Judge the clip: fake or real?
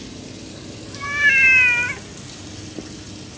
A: real